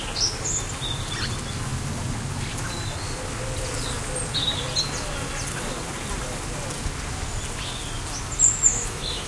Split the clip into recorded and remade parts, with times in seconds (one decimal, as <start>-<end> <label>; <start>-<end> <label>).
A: 0.0-8.7 recorded; 8.7-9.3 remade

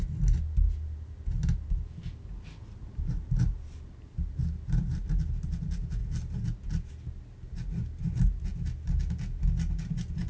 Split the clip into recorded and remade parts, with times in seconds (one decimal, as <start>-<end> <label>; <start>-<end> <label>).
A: 0.0-2.8 recorded; 2.8-3.4 remade; 3.4-10.3 recorded

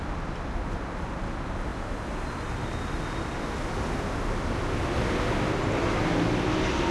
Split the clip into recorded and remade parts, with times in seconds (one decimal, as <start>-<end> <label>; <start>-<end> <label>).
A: 0.0-6.9 recorded

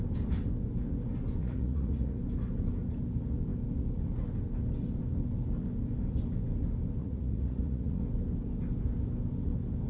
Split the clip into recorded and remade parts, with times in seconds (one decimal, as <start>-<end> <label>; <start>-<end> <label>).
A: 0.0-1.4 recorded; 1.4-2.2 remade; 2.2-7.0 recorded; 7.0-8.0 remade; 8.0-9.9 recorded

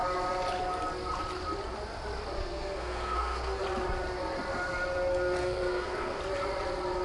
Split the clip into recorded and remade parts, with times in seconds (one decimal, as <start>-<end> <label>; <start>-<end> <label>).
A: 0.0-2.4 recorded; 2.4-3.6 remade; 3.6-5.4 recorded; 5.4-6.2 remade; 6.2-7.0 recorded

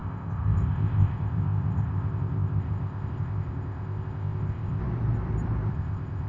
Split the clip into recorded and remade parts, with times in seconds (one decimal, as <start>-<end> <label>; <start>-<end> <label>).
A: 0.0-4.8 remade; 4.8-5.7 recorded; 5.7-6.3 remade

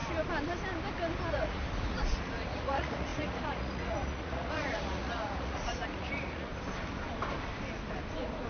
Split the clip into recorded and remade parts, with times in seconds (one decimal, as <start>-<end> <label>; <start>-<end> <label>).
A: 0.0-1.3 recorded; 1.3-6.5 remade; 6.5-8.5 recorded